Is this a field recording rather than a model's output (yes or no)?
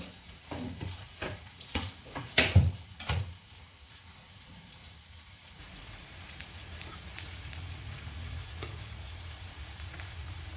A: no